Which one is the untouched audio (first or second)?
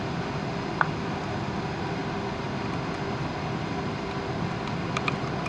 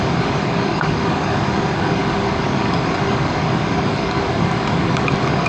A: first